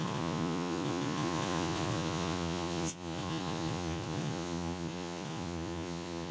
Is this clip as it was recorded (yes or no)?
no